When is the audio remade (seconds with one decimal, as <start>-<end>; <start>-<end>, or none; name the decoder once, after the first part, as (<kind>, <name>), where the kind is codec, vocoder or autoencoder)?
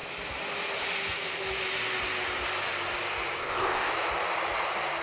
3.4-3.9 (codec, ZipCodec)